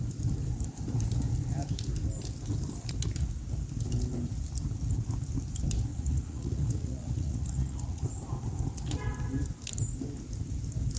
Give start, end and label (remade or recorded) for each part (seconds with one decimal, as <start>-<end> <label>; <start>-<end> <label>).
0.0-5.9 recorded; 5.9-8.0 remade; 8.0-11.0 recorded